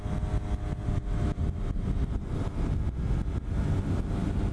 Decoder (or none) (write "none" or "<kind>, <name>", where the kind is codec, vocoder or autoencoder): none